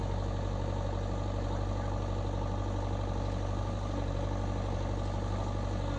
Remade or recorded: recorded